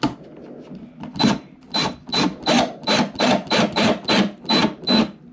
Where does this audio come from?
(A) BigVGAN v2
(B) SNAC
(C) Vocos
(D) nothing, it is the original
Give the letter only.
A